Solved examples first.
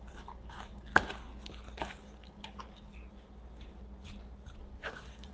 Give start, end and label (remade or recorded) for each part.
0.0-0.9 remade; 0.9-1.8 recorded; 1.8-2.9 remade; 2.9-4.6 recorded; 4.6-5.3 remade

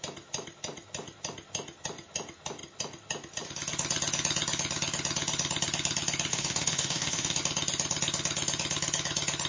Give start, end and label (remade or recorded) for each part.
0.0-6.3 recorded; 6.3-7.4 remade; 7.4-9.5 recorded